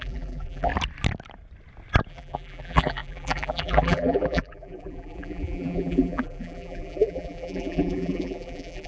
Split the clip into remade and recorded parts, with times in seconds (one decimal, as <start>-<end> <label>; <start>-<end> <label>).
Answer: 0.0-0.7 remade; 0.7-2.1 recorded; 2.1-8.9 remade